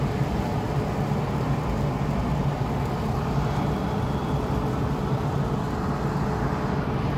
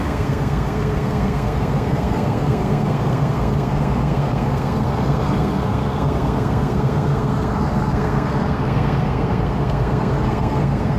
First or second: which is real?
first